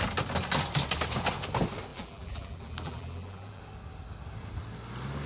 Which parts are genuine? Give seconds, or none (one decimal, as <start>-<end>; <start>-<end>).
0.0-1.9; 3.6-5.3